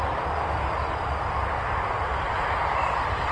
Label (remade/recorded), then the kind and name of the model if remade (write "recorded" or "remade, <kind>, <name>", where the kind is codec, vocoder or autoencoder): recorded